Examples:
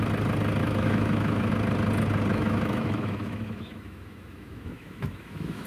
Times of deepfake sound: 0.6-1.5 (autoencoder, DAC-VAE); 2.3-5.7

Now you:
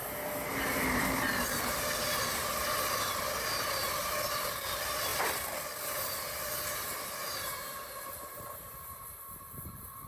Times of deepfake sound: none

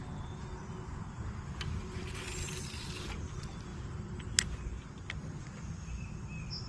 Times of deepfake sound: none

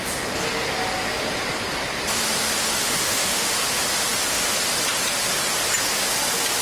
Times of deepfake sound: 2.8-3.6 (autoencoder, DAC-VAE)